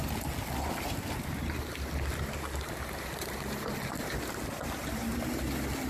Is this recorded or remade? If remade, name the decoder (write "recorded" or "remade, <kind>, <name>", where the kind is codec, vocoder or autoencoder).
recorded